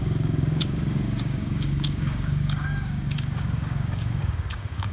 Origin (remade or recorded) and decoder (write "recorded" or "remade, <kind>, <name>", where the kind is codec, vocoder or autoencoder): remade, codec, DAC